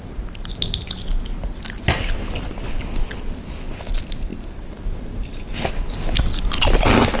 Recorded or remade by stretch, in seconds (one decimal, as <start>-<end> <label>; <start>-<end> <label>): 0.0-7.2 recorded